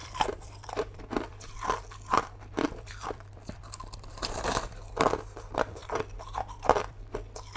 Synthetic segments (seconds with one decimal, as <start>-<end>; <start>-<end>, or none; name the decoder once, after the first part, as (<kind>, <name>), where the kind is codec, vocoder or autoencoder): 0.0-4.6 (vocoder, BigVGAN v2); 5.8-7.1